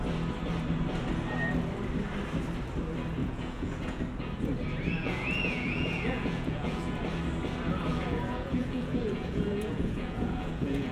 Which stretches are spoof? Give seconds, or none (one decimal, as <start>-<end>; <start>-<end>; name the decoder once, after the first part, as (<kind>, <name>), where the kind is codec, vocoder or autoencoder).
3.2-4.0 (vocoder, Vocos); 5.0-7.0; 7.9-10.9